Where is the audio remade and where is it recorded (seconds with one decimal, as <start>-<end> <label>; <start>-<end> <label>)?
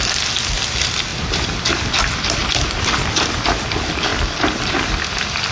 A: 0.0-2.4 recorded; 2.4-3.5 remade; 3.5-5.5 recorded